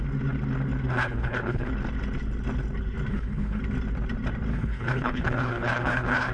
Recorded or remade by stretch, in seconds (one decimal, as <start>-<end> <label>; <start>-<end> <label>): 0.0-1.0 recorded; 1.0-1.7 remade; 1.7-3.1 recorded; 3.1-3.6 remade; 3.6-4.5 recorded; 4.5-6.3 remade